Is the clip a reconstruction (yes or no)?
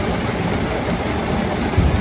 no